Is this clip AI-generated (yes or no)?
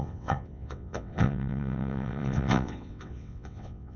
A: yes